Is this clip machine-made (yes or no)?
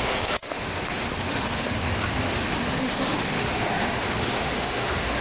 yes